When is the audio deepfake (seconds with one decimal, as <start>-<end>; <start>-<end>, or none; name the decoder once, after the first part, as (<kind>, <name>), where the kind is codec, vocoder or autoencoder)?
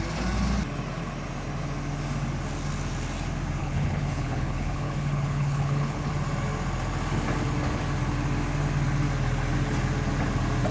3.6-6.1 (codec, HILCodec)